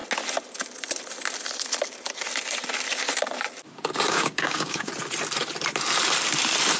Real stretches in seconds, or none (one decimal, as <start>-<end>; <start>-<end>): 0.0-4.1; 4.9-6.8